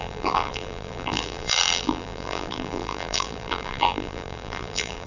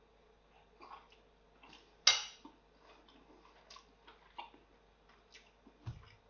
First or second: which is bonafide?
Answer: second